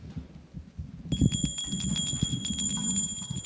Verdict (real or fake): real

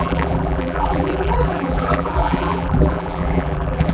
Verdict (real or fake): fake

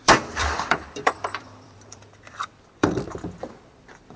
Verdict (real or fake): fake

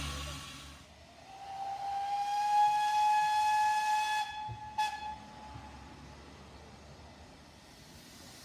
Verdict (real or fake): real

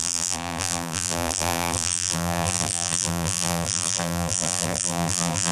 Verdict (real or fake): fake